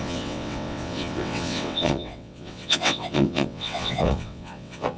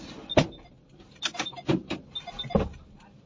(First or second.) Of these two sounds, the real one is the second